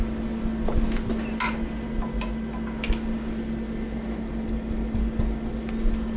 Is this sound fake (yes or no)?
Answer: no